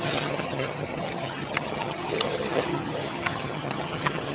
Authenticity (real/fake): fake